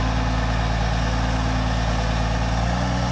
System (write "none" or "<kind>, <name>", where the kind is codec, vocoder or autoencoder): none